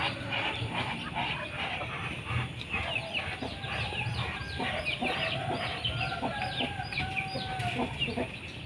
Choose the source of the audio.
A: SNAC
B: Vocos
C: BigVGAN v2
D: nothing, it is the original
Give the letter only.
C